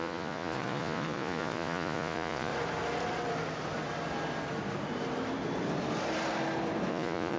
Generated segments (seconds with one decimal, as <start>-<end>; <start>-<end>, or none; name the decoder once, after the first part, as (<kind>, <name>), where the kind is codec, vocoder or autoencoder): 0.0-2.5 (vocoder, Vocos); 6.9-7.4